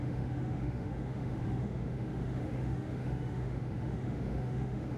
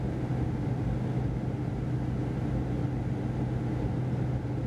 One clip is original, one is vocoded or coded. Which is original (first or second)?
second